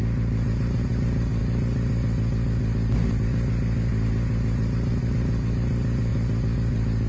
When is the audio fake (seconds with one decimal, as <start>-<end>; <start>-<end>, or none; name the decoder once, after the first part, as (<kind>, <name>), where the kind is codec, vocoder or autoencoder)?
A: none